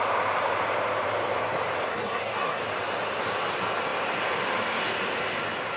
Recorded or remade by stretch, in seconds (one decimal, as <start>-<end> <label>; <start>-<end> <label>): 0.0-1.9 recorded; 1.9-2.6 remade; 2.6-5.8 recorded